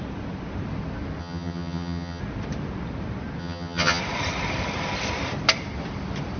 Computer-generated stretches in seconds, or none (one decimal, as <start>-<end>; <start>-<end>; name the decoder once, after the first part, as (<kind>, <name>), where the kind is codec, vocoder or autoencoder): 1.2-2.2 (vocoder, HiFi-GAN); 3.4-4.0